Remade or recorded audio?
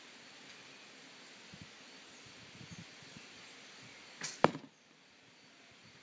recorded